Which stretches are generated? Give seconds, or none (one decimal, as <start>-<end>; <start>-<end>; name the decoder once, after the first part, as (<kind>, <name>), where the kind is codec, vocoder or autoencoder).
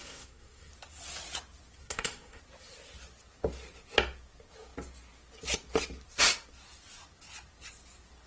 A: 0.0-0.7 (codec, SNAC); 1.8-2.4